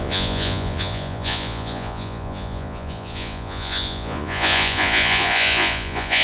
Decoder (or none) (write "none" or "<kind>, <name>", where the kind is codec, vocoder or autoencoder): vocoder, Vocos